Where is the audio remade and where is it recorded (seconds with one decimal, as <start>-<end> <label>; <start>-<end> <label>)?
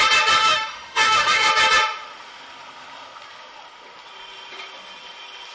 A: 0.0-0.4 recorded; 0.4-1.5 remade; 1.5-5.5 recorded